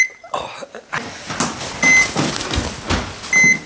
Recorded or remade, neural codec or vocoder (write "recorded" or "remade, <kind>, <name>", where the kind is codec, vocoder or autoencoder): recorded